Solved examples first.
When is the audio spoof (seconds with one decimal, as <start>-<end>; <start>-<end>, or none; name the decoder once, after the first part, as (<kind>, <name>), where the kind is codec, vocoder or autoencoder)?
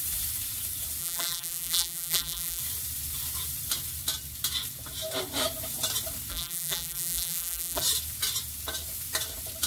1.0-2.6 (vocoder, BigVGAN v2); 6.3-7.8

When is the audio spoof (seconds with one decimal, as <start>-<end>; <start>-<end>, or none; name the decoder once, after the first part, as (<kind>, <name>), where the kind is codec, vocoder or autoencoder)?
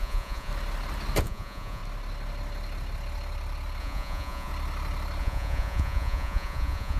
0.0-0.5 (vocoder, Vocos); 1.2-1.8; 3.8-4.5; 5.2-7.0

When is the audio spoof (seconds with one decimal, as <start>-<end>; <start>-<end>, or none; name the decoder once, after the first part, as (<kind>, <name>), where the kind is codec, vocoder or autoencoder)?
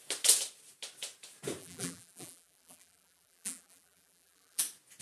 1.6-4.6 (vocoder, BigVGAN v2)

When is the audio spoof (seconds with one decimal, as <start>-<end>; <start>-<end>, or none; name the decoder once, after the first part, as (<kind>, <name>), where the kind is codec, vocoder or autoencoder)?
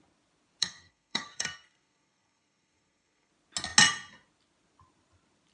0.6-3.3 (codec, SNAC)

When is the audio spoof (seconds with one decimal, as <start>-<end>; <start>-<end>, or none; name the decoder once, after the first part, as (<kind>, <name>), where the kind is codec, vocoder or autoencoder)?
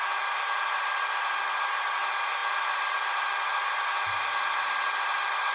none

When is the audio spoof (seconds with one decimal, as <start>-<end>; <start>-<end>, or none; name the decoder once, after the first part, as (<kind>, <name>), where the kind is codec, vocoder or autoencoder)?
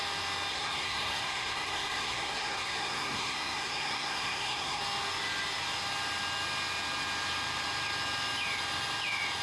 0.5-4.8 (codec, SNAC)